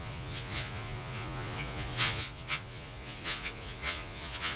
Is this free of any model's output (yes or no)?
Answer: no